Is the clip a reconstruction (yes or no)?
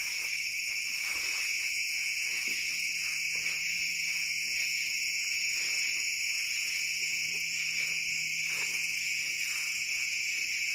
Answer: yes